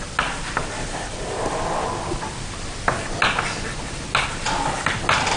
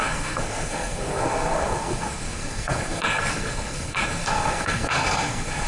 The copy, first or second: second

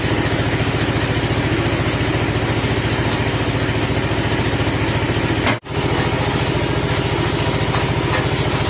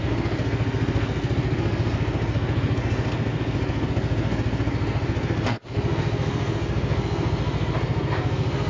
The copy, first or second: second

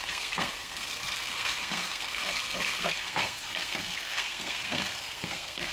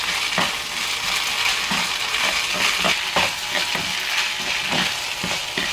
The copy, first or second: first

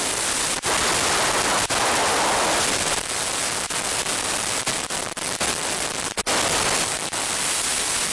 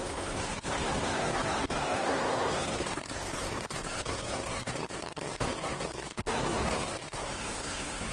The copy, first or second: second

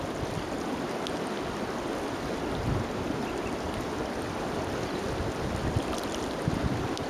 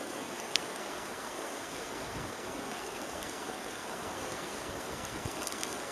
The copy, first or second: second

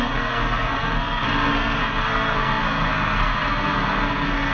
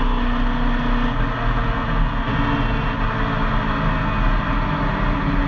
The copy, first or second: first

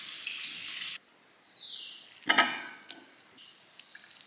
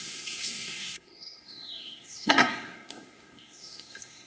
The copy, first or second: second